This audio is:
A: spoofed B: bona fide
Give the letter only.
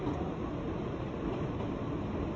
B